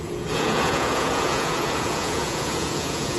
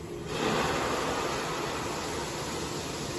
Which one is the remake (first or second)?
first